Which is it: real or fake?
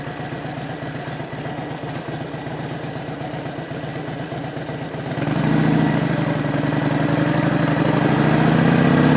real